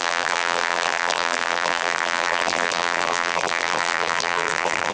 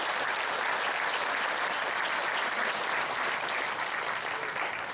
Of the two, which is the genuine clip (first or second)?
second